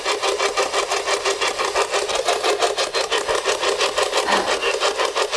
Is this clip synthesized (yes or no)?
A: no